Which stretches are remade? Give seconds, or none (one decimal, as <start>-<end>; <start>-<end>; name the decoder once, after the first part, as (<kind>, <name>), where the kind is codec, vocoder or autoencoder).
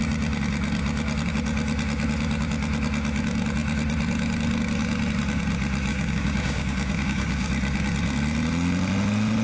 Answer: 5.9-7.5 (codec, DAC)